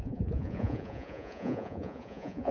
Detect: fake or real fake